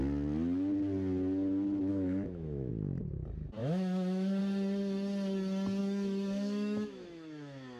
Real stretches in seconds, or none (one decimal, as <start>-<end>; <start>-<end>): 0.0-1.9; 2.7-3.6; 4.4-5.8